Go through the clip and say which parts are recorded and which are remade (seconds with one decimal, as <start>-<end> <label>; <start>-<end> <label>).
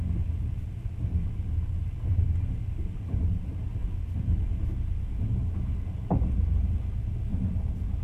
0.0-8.0 recorded